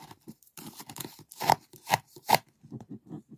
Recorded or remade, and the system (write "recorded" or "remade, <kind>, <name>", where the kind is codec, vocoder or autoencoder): remade, vocoder, BigVGAN v2